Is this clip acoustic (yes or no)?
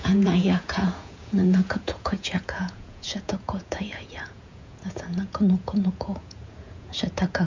no